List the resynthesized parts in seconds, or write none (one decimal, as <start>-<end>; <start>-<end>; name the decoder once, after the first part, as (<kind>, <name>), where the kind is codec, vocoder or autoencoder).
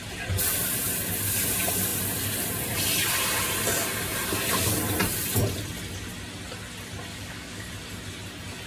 7.1-7.7 (codec, DAC)